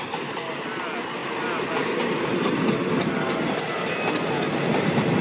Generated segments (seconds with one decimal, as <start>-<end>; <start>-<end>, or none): none